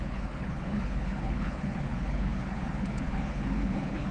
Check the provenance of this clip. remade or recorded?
remade